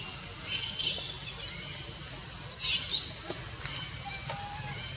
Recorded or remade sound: recorded